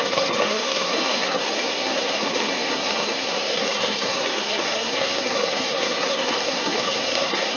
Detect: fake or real fake